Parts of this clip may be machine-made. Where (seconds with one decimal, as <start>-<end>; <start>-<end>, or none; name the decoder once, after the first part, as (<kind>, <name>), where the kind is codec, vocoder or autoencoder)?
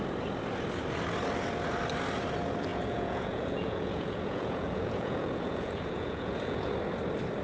2.7-6.7 (vocoder, Vocos)